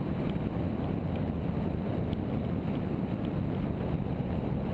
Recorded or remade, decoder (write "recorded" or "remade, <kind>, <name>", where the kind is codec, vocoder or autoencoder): recorded